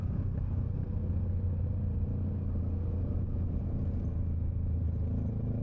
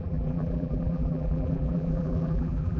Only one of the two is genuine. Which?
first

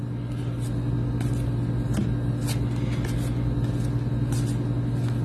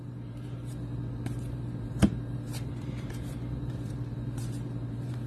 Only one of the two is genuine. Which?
first